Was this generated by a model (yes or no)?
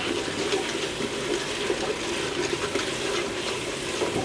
no